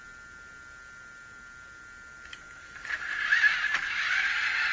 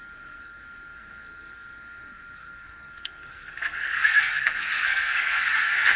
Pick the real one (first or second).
first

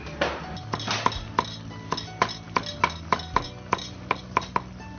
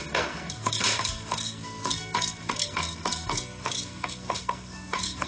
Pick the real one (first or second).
first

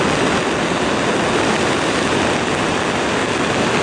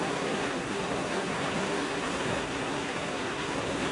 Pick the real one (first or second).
first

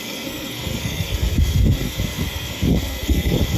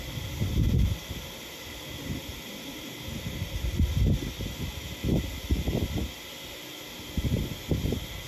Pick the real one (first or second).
second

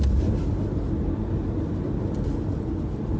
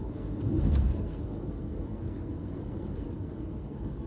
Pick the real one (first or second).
first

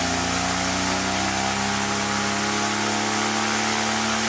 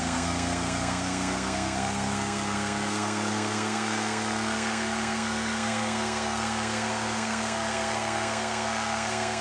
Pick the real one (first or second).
first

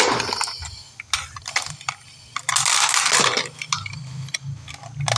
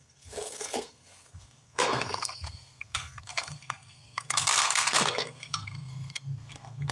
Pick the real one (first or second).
first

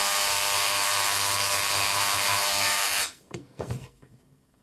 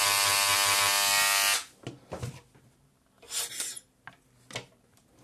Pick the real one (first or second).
second